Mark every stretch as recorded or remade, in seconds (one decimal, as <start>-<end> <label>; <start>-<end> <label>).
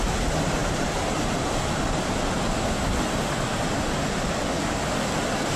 0.0-0.6 recorded; 0.6-1.4 remade; 1.4-5.6 recorded